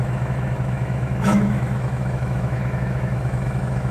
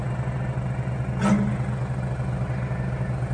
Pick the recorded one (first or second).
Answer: second